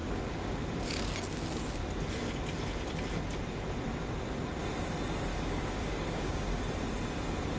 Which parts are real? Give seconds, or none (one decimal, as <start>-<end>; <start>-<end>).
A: 0.6-5.3; 6.6-7.6